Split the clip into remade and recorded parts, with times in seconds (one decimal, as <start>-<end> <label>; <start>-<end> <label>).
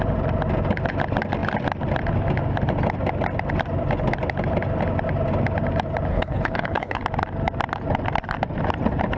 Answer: 0.0-6.1 recorded; 6.1-7.0 remade; 7.0-9.2 recorded